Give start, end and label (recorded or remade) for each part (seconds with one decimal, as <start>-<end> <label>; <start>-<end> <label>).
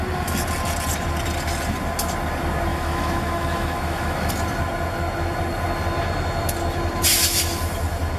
0.0-2.7 recorded; 2.7-4.3 remade; 4.3-8.2 recorded